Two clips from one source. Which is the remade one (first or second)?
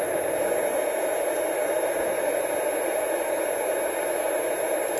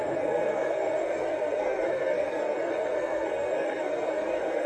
second